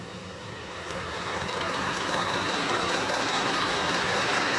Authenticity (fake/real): fake